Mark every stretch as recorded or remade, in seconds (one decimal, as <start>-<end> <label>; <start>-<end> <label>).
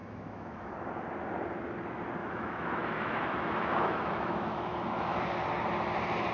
0.0-0.7 remade; 0.7-2.2 recorded; 2.2-5.2 remade; 5.2-6.3 recorded